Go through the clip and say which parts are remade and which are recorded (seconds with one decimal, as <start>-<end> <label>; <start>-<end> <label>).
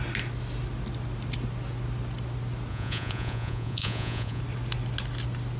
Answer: 0.0-2.7 recorded; 2.7-4.4 remade; 4.4-5.6 recorded